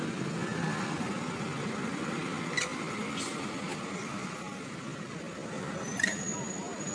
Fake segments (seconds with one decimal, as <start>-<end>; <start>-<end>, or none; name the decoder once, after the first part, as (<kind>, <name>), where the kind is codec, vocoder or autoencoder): none